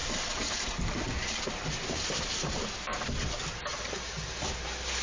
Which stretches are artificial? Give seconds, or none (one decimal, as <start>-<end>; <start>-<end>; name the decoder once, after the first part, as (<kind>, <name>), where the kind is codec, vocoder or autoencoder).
0.0-3.0 (vocoder, BigVGAN v2)